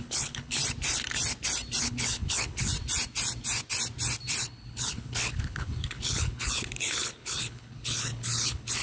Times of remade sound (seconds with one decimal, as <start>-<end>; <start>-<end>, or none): 0.0-0.6; 1.8-2.7; 4.4-8.8